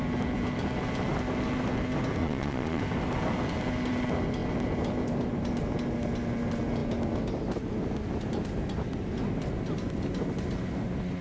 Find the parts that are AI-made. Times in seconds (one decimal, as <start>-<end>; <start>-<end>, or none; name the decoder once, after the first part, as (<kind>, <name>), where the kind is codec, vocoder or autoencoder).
2.2-2.8 (vocoder, Vocos)